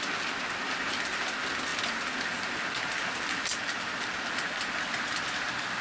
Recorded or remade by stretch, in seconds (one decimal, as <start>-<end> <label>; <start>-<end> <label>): 0.0-5.8 recorded

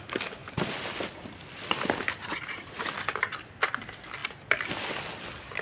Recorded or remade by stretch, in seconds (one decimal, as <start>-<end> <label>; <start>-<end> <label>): 0.0-5.6 recorded

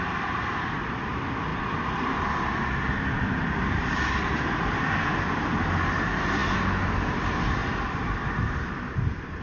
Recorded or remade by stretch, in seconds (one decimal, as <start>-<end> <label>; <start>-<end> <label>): 0.0-9.4 recorded

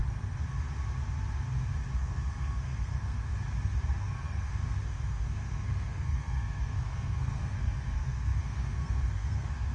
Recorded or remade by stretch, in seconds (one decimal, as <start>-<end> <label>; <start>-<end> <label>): 0.0-2.0 recorded; 2.0-3.3 remade; 3.3-4.0 recorded; 4.0-9.7 remade

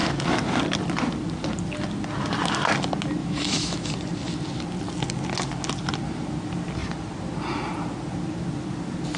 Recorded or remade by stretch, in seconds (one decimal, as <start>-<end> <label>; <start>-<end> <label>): 0.0-3.2 recorded; 3.2-3.9 remade; 3.9-9.2 recorded

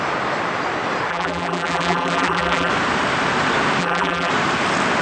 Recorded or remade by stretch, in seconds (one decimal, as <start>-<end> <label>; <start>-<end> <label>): 0.0-1.1 recorded; 1.1-2.7 remade; 2.7-3.8 recorded; 3.8-4.3 remade; 4.3-5.0 recorded